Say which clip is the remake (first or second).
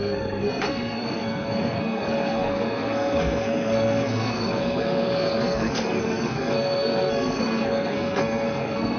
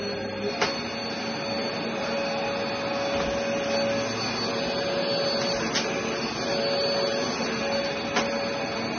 first